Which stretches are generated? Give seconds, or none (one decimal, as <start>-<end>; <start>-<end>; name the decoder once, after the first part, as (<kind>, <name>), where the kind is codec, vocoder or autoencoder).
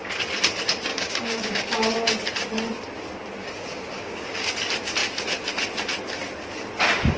0.9-1.9 (codec, DAC); 3.4-4.5